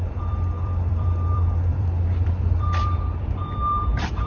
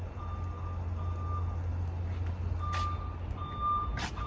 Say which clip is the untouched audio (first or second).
second